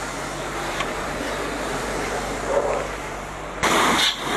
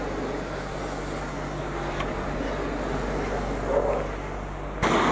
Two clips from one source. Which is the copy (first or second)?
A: first